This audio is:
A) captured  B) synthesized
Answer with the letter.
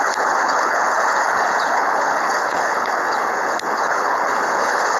B